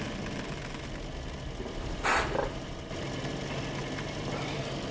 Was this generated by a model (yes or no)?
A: no